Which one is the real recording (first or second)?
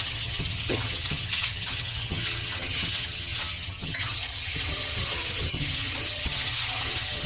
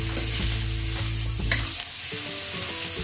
second